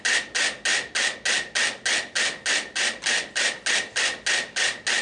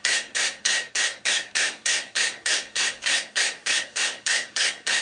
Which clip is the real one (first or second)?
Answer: first